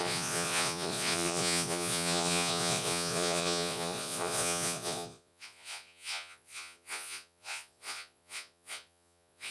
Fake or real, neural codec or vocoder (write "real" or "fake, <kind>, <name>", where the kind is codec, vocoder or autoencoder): fake, vocoder, Vocos